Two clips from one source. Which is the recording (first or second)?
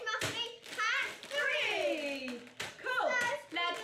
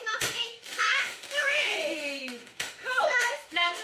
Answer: first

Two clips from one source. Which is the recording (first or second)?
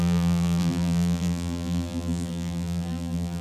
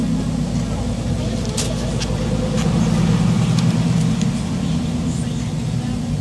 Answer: second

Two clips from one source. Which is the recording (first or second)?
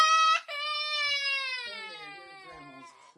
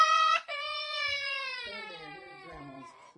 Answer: first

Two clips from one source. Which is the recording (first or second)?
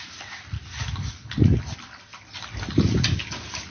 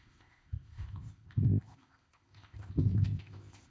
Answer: first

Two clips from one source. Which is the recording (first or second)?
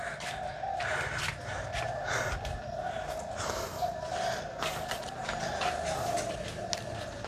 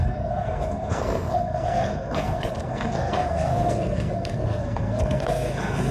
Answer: first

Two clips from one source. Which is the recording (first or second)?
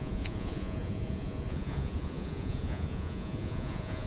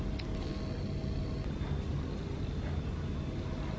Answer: second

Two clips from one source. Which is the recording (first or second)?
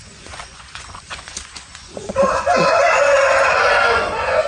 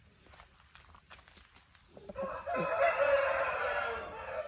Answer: second